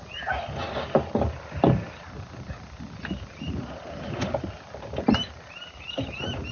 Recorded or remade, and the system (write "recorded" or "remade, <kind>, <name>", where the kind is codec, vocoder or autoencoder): recorded